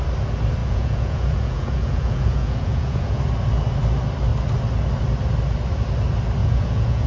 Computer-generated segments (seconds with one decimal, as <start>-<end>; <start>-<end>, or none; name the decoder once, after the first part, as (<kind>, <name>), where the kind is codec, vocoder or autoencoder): 0.6-3.2 (vocoder, Vocos); 6.4-7.1